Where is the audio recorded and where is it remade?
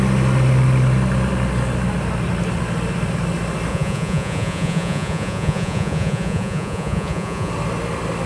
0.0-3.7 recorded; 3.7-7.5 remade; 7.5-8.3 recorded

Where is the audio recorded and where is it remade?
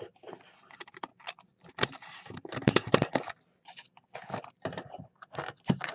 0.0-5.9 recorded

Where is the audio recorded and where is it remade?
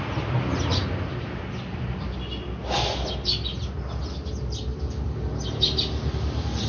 0.0-6.7 recorded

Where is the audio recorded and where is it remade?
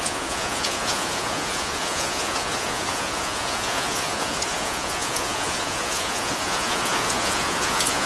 0.0-8.1 remade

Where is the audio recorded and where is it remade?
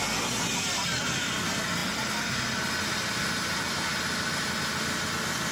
0.0-5.5 recorded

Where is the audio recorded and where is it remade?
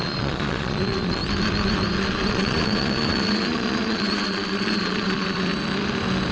0.0-1.2 remade; 1.2-2.3 recorded; 2.3-5.5 remade; 5.5-6.3 recorded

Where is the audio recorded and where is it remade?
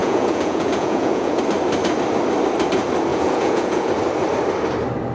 0.0-1.4 remade; 1.4-3.1 recorded; 3.1-3.9 remade; 3.9-5.1 recorded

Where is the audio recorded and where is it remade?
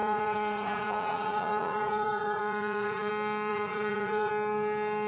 0.0-3.1 remade; 3.1-3.5 recorded; 3.5-4.3 remade; 4.3-5.1 recorded